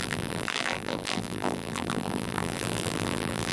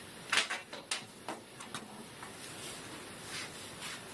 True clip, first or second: second